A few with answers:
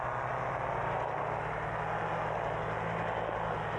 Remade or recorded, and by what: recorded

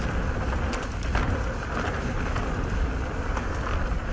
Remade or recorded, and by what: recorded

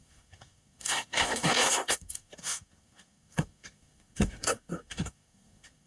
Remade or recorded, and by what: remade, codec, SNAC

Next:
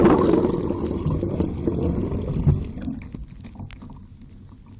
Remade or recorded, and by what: recorded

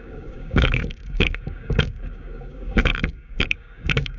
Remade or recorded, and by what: remade, codec, DAC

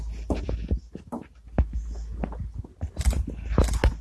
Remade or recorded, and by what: recorded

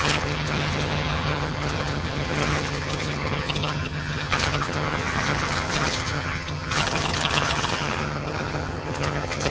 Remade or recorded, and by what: remade, vocoder, HiFi-GAN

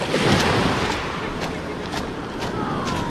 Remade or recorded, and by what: recorded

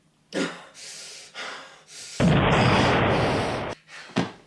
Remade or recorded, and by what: recorded